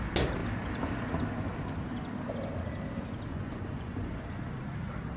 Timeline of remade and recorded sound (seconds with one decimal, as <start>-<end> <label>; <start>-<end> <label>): 0.0-3.3 recorded; 3.3-4.2 remade; 4.2-5.2 recorded